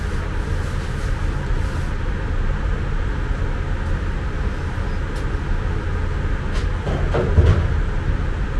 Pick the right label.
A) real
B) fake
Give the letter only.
A